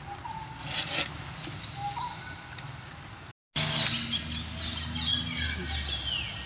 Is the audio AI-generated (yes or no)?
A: no